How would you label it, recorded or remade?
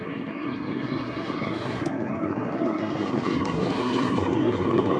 remade